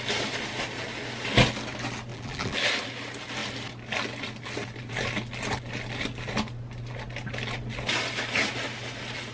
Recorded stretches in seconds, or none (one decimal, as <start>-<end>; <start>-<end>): 0.0-2.1; 2.6-9.3